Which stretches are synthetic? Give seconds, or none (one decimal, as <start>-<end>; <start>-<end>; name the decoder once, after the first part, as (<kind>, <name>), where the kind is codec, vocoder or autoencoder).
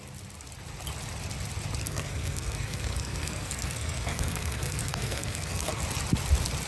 1.8-5.8 (codec, SNAC)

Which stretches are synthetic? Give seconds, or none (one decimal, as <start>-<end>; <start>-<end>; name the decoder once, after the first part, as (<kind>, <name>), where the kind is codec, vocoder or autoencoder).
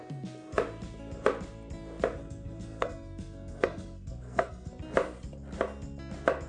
2.2-4.7 (codec, SNAC)